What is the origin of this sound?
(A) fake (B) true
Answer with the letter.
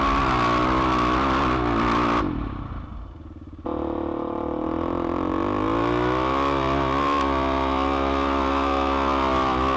B